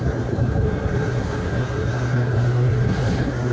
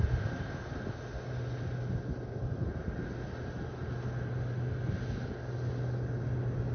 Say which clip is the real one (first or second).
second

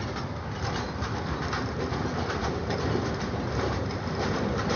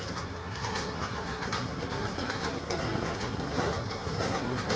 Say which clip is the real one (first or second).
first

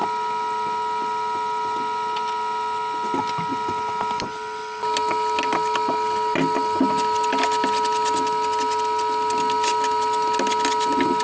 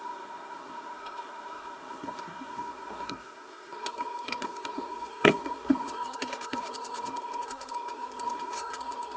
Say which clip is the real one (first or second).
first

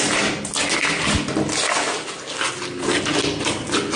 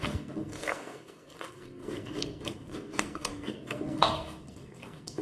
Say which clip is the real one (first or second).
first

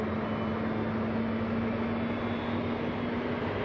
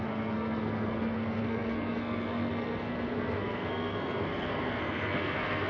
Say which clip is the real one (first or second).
first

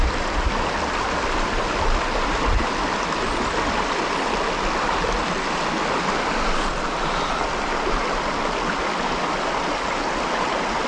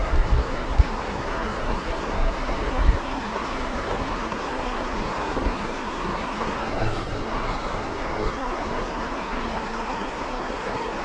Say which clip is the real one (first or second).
first